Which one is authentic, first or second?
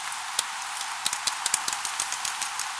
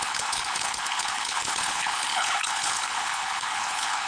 first